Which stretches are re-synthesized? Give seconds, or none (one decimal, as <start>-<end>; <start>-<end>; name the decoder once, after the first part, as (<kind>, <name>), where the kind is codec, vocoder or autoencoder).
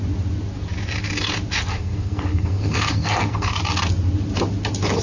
1.7-3.5 (codec, SNAC)